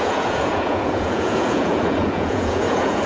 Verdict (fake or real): fake